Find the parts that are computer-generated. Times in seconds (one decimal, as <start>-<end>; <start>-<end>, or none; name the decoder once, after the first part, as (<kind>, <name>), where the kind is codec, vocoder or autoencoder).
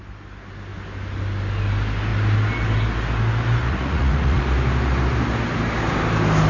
3.6-4.4 (vocoder, Vocos)